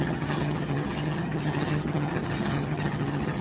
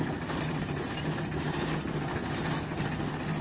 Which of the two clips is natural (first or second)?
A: second